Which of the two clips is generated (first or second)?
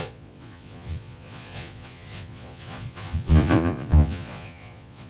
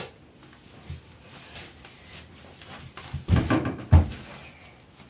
first